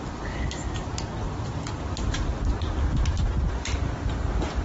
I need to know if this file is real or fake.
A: real